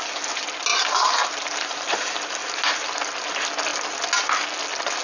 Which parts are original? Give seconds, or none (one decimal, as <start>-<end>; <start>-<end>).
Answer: 0.0-0.7; 1.9-2.4; 3.3-5.0